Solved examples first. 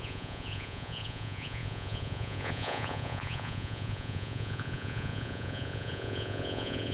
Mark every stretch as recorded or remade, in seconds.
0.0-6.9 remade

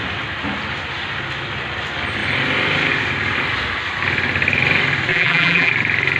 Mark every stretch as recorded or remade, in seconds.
0.0-5.1 recorded; 5.1-5.7 remade; 5.7-6.2 recorded

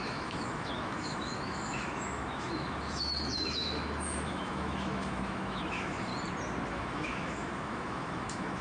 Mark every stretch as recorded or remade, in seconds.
0.0-6.1 remade; 6.1-6.7 recorded; 6.7-8.6 remade

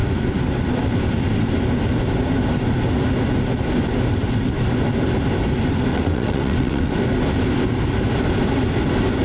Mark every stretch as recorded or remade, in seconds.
0.0-5.9 recorded; 5.9-6.9 remade; 6.9-9.2 recorded

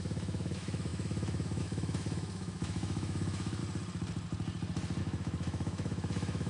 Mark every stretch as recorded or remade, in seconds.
0.0-3.6 remade; 3.6-5.0 recorded; 5.0-6.5 remade